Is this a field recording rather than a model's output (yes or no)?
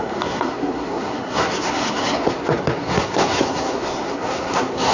no